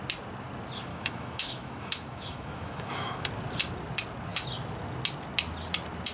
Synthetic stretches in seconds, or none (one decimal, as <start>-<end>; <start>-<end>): 0.9-3.3